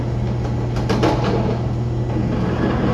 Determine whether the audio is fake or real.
real